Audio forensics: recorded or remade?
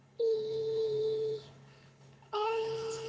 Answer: remade